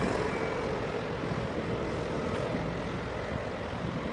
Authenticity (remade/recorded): recorded